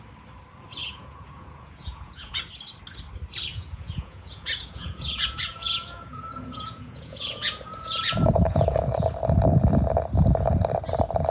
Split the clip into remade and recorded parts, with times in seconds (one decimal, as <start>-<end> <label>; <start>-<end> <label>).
0.0-0.8 recorded; 0.8-2.4 remade; 2.4-3.5 recorded; 3.5-8.8 remade; 8.8-11.3 recorded